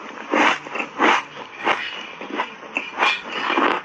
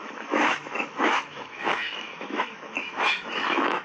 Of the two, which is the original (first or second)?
first